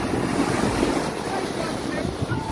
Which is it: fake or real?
real